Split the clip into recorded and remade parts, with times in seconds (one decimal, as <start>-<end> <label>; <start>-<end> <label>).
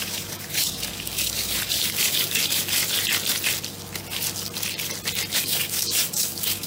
0.0-2.8 remade; 2.8-5.4 recorded; 5.4-6.7 remade